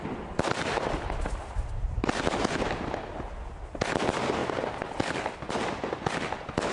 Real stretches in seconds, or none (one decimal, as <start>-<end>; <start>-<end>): 0.0-6.7